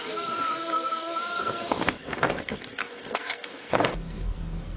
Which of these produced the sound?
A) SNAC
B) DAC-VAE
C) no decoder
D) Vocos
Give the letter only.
A